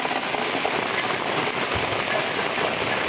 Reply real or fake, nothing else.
real